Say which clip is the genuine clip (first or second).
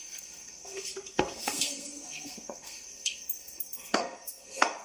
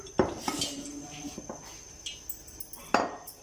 second